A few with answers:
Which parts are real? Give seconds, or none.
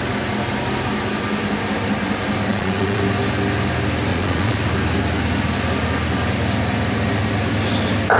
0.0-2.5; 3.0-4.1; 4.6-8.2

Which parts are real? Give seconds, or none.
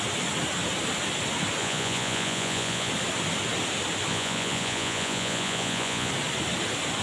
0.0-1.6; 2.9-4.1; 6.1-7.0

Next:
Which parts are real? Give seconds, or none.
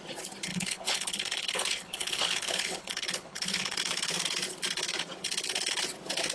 0.0-0.5; 3.8-6.3